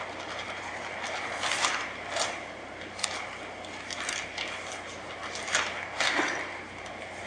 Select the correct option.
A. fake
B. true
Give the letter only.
B